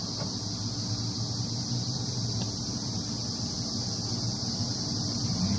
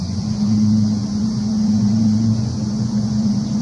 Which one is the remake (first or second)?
second